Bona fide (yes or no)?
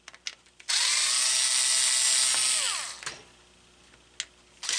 yes